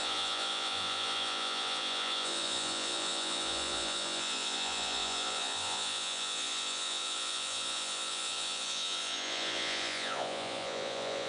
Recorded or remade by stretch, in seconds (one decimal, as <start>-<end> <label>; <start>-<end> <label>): 0.0-11.3 remade